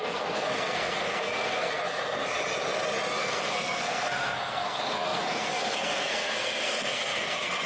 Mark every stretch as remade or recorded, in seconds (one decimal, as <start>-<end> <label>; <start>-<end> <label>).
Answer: 0.0-2.2 remade; 2.2-3.2 recorded; 3.2-7.7 remade